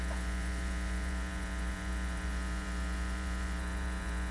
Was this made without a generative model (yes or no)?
no